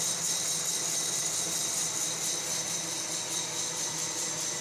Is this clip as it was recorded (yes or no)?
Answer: yes